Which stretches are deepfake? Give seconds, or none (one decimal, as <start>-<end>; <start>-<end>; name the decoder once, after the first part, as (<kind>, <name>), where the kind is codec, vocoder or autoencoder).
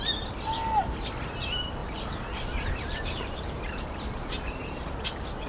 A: 1.8-3.9 (vocoder, BigVGAN v2)